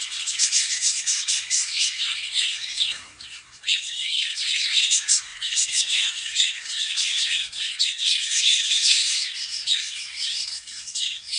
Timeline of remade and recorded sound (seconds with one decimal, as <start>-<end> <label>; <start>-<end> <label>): 0.0-11.4 remade